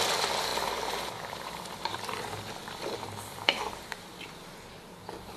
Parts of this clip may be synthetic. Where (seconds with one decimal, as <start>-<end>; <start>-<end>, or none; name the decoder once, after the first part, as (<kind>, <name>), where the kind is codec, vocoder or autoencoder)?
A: 0.5-3.7 (vocoder, BigVGAN v2)